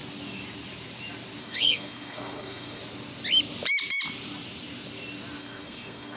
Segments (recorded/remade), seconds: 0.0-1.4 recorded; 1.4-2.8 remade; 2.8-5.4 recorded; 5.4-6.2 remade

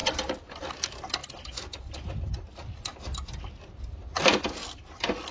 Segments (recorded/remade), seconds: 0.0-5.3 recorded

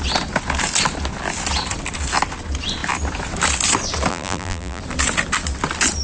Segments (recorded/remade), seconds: 0.0-4.1 recorded; 4.1-4.8 remade; 4.8-6.0 recorded

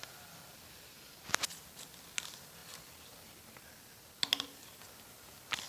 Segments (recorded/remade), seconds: 0.0-5.7 recorded